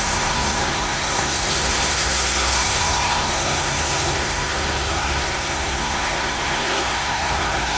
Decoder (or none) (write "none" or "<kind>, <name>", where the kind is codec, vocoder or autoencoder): codec, SNAC